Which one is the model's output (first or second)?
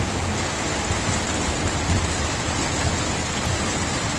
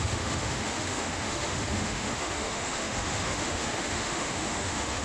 second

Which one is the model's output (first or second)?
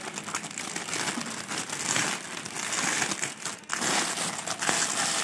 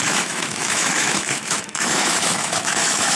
second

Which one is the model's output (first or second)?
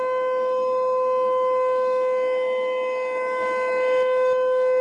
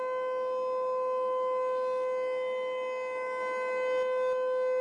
first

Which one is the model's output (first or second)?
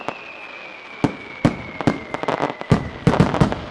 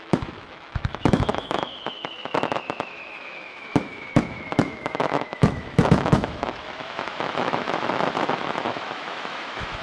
second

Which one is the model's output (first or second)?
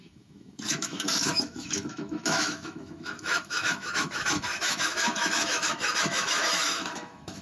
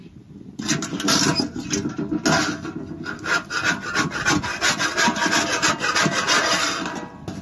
first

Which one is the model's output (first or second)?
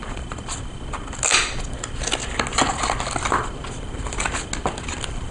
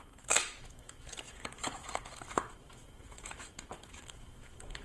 second